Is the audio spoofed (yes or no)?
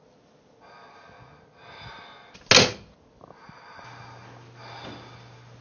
no